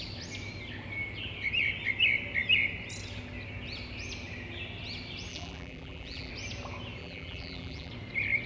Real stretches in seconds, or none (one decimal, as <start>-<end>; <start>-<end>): 0.0-5.3; 6.3-7.0; 7.9-8.5